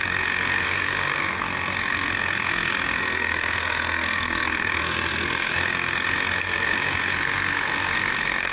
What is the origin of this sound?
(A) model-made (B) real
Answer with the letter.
A